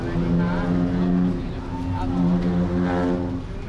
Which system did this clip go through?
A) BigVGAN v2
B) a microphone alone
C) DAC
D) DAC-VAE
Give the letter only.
B